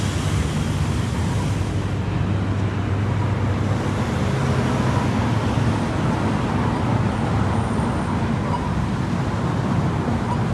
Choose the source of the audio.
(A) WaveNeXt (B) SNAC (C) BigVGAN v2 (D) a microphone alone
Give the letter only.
D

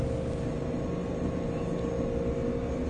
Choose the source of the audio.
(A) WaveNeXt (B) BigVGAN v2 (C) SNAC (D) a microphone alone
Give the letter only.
D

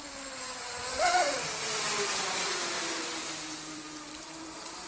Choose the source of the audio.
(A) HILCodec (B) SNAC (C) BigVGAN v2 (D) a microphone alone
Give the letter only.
C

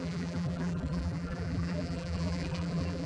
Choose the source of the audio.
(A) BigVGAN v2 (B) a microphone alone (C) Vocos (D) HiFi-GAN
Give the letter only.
A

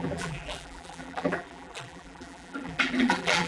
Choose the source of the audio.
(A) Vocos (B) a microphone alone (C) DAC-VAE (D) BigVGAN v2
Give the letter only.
D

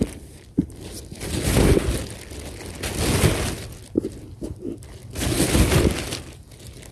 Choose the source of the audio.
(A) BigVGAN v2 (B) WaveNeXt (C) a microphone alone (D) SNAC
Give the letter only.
C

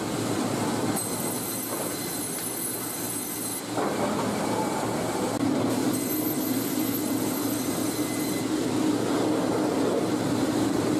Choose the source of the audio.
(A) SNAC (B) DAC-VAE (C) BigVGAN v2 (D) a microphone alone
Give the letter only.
D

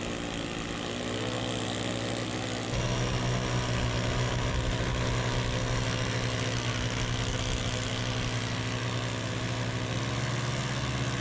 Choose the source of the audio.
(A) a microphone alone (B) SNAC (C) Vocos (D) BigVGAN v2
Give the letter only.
A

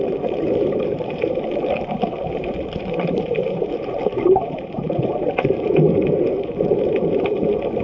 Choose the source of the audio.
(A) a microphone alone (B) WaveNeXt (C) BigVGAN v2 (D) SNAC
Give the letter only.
C